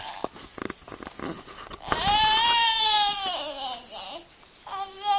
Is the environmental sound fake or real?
real